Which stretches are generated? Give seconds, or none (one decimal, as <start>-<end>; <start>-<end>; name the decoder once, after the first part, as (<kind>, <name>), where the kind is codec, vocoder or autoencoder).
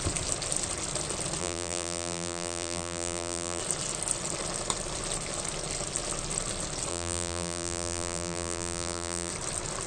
1.4-3.6 (vocoder, BigVGAN v2); 6.9-9.3